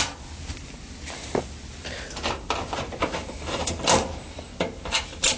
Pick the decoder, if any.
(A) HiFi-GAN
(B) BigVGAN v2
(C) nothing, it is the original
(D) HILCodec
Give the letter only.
C